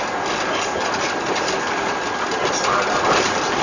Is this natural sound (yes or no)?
yes